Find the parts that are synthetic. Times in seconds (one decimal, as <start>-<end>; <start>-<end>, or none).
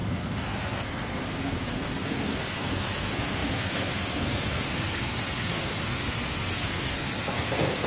0.0-7.9